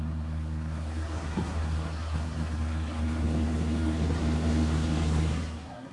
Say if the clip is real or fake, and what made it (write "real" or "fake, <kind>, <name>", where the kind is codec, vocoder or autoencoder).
fake, codec, SNAC